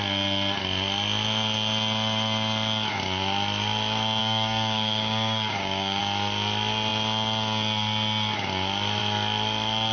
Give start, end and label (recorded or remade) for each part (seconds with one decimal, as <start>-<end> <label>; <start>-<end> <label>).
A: 0.0-4.2 recorded; 4.2-6.0 remade; 6.0-9.9 recorded